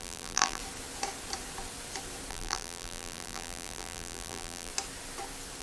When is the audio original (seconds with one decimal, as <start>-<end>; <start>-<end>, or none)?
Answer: 0.6-2.3; 4.7-5.6